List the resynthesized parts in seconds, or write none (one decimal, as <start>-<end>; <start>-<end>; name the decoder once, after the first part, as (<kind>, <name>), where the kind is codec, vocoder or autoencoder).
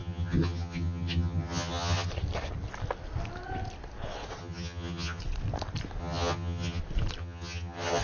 0.0-2.1 (vocoder, HiFi-GAN); 4.4-5.2; 6.0-6.8; 7.2-8.0